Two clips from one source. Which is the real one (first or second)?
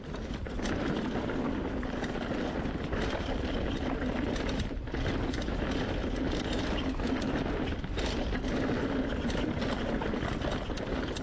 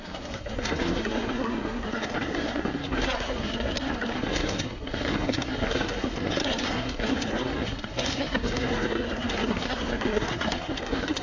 first